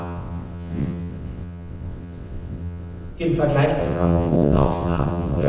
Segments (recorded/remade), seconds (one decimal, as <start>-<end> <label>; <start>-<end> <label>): 0.0-3.1 remade; 3.1-3.8 recorded; 3.8-5.5 remade